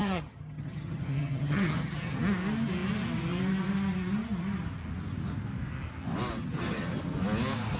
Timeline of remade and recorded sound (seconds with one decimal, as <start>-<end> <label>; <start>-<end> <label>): 0.0-2.2 remade; 2.2-6.4 recorded; 6.4-7.0 remade; 7.0-7.8 recorded